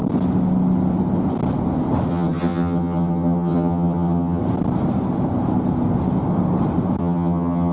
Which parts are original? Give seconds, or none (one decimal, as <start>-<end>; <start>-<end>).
0.0-2.1; 4.4-7.0